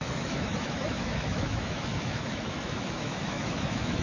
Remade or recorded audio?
remade